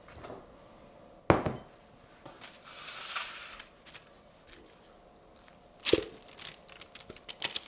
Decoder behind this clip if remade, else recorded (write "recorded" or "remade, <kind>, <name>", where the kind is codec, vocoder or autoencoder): recorded